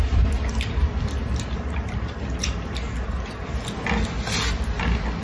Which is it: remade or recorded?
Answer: recorded